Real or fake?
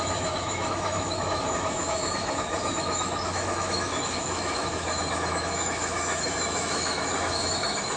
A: fake